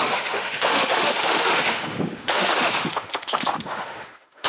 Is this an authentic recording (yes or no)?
no